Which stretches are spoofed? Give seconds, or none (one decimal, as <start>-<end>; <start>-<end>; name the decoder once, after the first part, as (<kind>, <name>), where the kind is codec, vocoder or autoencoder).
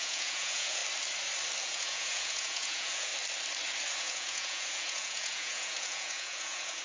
0.0-0.8 (vocoder, Vocos); 1.6-3.1; 4.0-6.8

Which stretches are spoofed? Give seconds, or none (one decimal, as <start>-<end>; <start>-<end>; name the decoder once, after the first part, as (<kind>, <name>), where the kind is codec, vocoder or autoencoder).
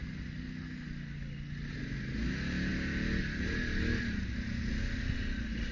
none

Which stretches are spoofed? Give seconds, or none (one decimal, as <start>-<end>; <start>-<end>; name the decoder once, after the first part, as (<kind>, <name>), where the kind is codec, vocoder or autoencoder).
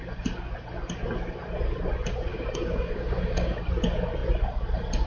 2.3-3.6 (codec, DAC)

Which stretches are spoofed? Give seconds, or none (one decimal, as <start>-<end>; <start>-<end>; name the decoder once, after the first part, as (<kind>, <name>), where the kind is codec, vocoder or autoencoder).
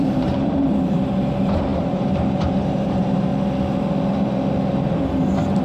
0.0-3.3 (vocoder, BigVGAN v2); 4.7-5.6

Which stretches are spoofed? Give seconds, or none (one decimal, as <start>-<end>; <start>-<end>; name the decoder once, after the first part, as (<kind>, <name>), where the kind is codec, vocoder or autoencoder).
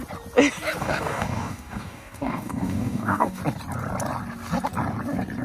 0.8-3.4 (codec, DAC)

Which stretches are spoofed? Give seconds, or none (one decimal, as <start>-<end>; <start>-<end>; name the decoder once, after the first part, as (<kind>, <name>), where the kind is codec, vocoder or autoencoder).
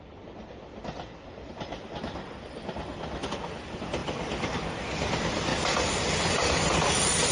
0.7-3.3 (vocoder, BigVGAN v2)